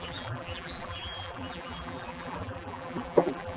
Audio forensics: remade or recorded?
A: remade